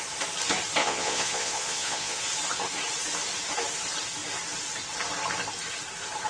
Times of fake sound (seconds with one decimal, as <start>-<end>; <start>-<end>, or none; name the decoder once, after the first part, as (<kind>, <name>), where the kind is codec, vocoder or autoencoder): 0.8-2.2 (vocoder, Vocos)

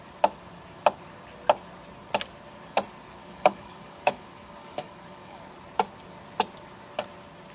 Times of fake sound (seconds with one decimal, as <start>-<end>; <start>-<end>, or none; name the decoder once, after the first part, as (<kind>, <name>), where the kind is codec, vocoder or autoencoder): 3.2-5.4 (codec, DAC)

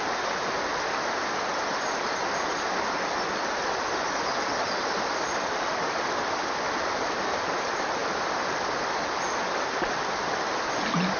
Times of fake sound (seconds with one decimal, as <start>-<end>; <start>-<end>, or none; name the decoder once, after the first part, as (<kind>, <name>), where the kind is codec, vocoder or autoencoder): none

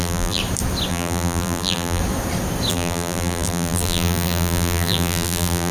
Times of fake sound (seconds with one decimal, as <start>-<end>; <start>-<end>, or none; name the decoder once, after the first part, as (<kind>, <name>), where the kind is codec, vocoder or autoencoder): 0.0-0.4 (vocoder, BigVGAN v2); 0.9-2.0; 2.7-5.7